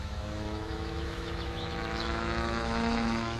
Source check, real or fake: fake